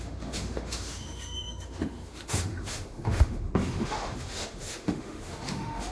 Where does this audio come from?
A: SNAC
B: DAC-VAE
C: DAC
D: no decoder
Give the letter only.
B